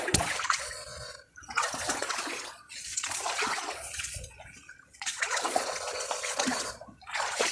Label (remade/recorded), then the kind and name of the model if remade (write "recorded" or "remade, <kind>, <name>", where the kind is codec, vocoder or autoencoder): remade, vocoder, Vocos